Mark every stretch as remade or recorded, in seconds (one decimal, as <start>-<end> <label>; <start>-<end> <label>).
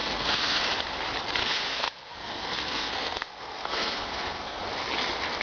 0.0-0.6 remade; 0.6-1.4 recorded; 1.4-4.6 remade; 4.6-5.4 recorded